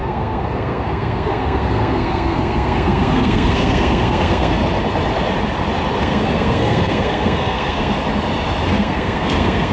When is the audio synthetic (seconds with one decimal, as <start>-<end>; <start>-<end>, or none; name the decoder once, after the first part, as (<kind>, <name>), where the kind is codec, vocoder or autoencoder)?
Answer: 0.0-4.6 (codec, SNAC); 6.0-7.9; 8.7-9.7